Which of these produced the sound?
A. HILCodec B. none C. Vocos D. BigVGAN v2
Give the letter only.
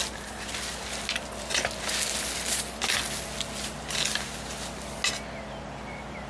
B